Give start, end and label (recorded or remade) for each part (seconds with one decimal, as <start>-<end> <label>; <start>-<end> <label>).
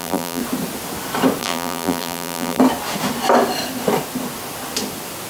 0.0-0.4 remade; 0.4-1.4 recorded; 1.4-2.6 remade; 2.6-5.3 recorded